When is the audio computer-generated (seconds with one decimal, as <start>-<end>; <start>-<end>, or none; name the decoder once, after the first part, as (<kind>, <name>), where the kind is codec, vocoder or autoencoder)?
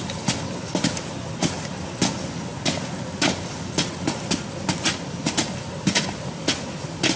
none